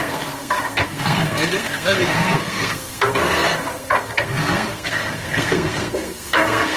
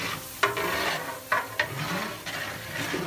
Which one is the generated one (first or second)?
first